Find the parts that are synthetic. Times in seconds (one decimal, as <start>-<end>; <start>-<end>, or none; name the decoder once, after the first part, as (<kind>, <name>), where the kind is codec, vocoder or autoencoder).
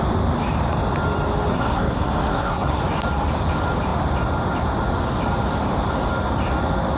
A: 1.5-2.8 (codec, SNAC)